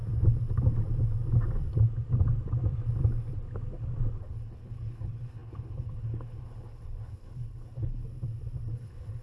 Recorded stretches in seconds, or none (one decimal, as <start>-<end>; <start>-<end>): 0.0-4.2; 8.0-8.7